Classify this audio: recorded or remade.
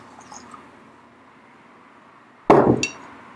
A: recorded